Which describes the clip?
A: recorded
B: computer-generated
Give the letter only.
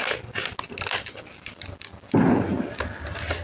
A